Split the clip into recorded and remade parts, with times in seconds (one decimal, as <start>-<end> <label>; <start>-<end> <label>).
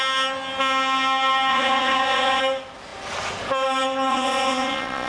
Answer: 0.0-1.5 recorded; 1.5-2.4 remade; 2.4-4.1 recorded; 4.1-5.1 remade